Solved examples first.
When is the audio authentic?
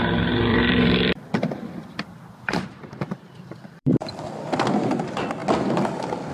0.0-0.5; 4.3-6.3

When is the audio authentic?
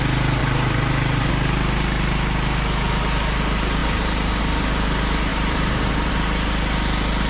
0.0-0.4; 1.3-3.8; 4.4-5.3; 6.1-7.3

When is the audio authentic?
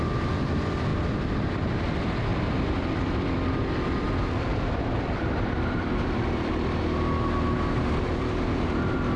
0.0-0.9; 1.8-2.3; 6.5-9.2